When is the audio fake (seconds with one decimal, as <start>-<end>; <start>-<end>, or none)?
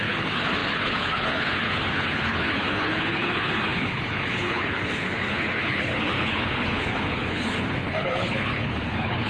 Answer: 0.0-9.3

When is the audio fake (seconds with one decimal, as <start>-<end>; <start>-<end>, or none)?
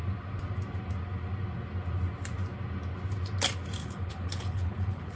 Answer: 3.8-5.2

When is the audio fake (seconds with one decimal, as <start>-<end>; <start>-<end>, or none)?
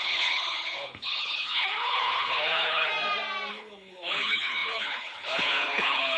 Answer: 0.0-2.9; 3.5-6.2